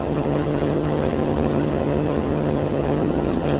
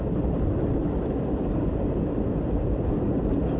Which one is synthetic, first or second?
first